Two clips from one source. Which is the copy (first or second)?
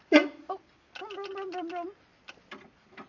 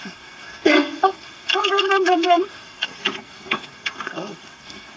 second